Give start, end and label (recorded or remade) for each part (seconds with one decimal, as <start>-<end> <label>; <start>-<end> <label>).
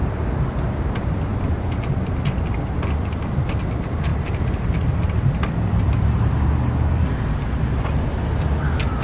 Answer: 0.0-4.1 recorded; 4.1-6.1 remade; 6.1-9.0 recorded